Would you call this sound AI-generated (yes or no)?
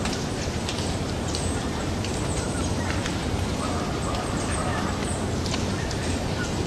yes